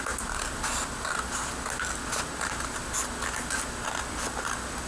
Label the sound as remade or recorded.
recorded